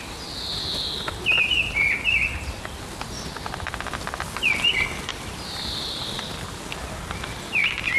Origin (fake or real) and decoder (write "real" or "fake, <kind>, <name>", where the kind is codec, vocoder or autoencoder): real